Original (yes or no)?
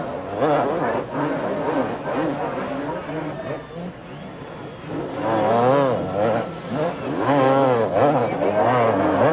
yes